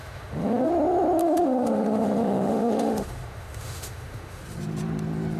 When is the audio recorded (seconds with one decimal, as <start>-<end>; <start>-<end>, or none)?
0.7-1.2; 4.4-5.4